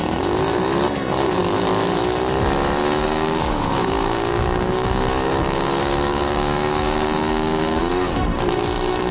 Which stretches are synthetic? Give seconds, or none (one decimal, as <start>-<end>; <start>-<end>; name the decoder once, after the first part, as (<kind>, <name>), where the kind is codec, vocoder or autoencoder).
2.8-7.8 (codec, DAC)